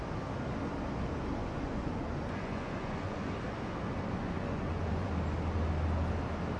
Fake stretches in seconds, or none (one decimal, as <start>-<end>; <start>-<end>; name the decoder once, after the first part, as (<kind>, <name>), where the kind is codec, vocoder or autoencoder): 1.4-3.3 (vocoder, Vocos); 4.2-5.1